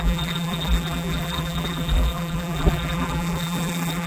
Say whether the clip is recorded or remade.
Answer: remade